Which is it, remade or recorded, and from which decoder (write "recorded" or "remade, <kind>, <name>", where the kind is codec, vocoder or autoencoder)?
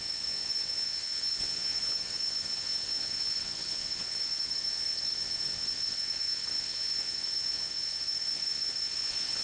remade, vocoder, WaveNeXt